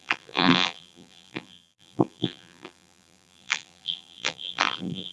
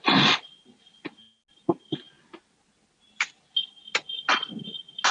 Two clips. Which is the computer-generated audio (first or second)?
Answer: first